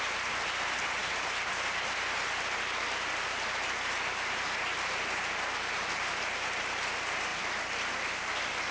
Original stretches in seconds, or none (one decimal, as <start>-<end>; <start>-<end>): 0.0-8.7